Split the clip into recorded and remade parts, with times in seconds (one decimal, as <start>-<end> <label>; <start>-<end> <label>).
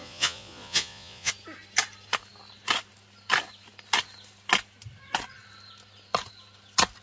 0.0-1.3 remade; 1.3-7.0 recorded